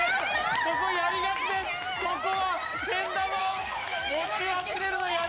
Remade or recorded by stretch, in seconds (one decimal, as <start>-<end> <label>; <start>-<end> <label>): 0.0-3.4 recorded; 3.4-5.3 remade

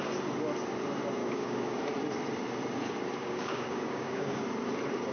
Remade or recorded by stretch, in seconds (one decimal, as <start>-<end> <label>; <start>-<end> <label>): 0.0-1.2 recorded; 1.2-1.8 remade; 1.8-3.2 recorded; 3.2-4.4 remade; 4.4-5.1 recorded

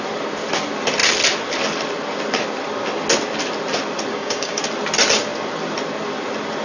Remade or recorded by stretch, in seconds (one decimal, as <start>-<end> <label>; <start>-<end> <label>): 0.0-4.1 recorded; 4.1-4.6 remade; 4.6-6.6 recorded

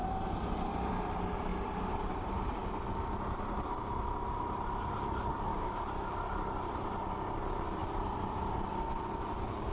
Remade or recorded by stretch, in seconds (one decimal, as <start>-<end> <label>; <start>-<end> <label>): 0.0-5.5 recorded; 5.5-6.1 remade; 6.1-9.7 recorded

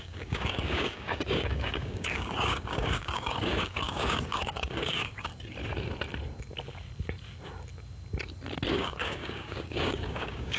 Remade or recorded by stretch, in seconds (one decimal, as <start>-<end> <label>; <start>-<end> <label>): 0.0-5.3 remade; 5.3-8.7 recorded; 8.7-10.6 remade

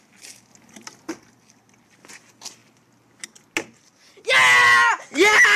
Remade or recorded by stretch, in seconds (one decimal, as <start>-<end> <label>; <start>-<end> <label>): 0.0-5.6 recorded